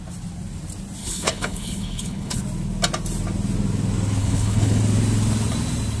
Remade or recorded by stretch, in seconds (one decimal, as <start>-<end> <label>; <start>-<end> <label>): 0.0-1.0 recorded; 1.0-2.4 remade; 2.4-4.2 recorded; 4.2-4.8 remade; 4.8-6.0 recorded